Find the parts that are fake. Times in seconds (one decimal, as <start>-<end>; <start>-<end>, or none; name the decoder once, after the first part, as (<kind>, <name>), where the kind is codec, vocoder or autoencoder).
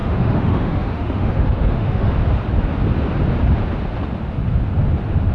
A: 0.0-2.1 (autoencoder, DAC-VAE)